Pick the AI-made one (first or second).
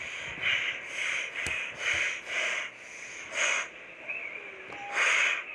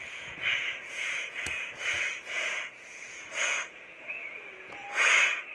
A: second